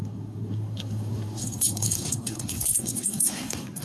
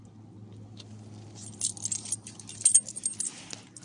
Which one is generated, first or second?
first